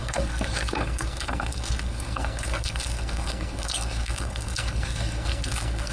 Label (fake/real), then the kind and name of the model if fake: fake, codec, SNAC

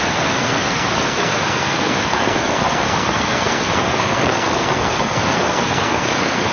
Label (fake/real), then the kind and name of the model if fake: fake, codec, SNAC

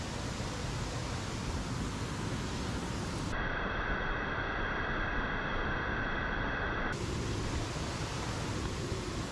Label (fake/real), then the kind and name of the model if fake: real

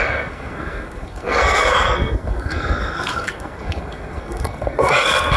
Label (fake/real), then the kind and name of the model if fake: fake, codec, SNAC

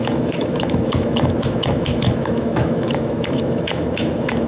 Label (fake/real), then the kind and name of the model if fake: fake, autoencoder, DAC-VAE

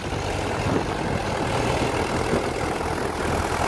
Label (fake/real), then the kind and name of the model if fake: real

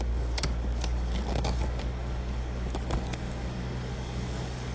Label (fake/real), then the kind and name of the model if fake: fake, codec, DAC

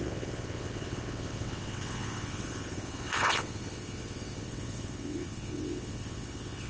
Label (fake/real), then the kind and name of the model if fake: fake, vocoder, WaveNeXt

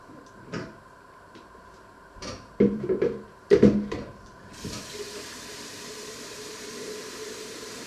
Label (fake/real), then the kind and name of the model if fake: fake, vocoder, BigVGAN v2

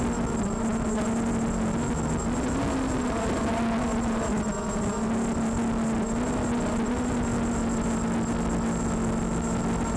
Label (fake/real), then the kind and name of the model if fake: real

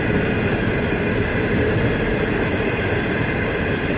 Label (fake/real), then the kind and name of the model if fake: real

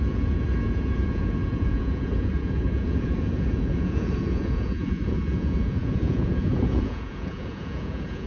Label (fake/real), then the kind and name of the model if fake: fake, vocoder, Vocos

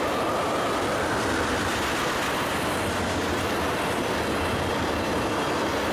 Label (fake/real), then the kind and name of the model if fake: real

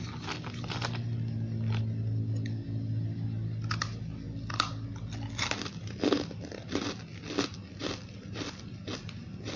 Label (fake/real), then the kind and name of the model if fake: real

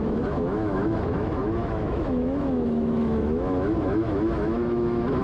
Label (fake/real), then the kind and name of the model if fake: fake, autoencoder, DAC-VAE